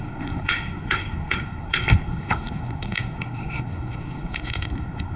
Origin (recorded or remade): remade